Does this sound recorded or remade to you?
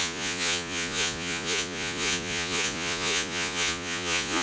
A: remade